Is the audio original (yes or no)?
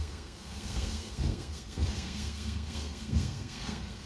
no